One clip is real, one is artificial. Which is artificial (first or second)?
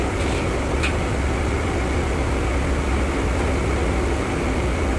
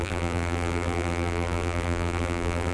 second